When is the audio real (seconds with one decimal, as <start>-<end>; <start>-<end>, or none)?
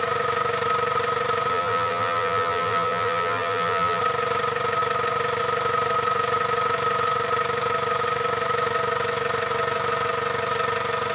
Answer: 0.0-1.5; 4.0-11.1